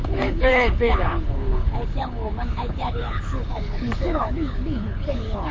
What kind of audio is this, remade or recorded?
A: remade